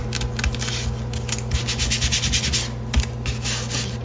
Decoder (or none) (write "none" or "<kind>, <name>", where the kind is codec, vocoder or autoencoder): none